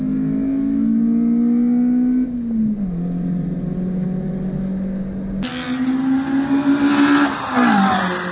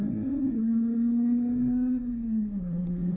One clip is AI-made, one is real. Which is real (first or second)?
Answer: first